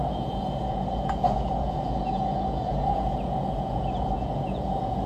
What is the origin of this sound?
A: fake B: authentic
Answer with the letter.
A